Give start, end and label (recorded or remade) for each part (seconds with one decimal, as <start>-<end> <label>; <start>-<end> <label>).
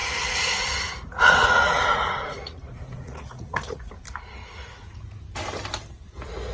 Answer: 0.0-3.9 remade; 3.9-4.4 recorded; 4.4-5.2 remade; 5.2-6.5 recorded